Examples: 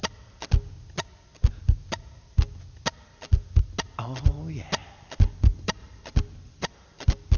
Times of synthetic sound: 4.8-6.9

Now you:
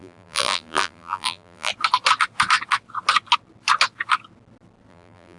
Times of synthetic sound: 0.0-1.7; 4.9-5.4

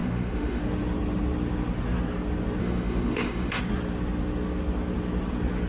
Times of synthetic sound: 0.0-0.6; 2.6-3.6

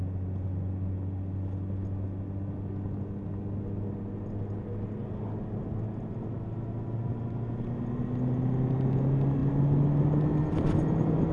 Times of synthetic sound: none